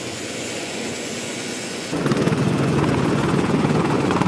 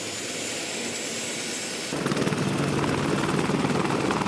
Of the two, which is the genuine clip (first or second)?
second